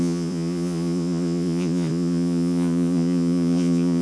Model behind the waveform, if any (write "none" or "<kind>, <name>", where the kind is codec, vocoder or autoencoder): vocoder, Vocos